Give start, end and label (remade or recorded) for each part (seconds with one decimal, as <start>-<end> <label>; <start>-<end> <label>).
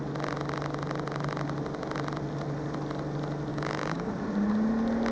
0.0-3.5 recorded; 3.5-4.1 remade; 4.1-5.1 recorded